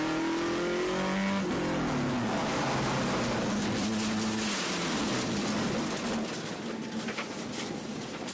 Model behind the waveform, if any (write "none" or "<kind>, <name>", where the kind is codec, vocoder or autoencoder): none